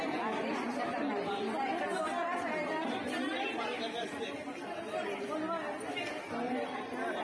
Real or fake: real